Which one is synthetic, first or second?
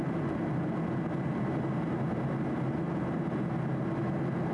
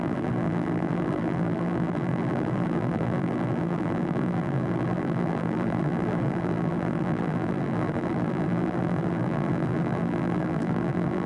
second